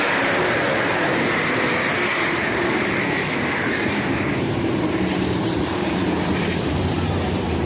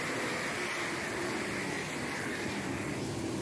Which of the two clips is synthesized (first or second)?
first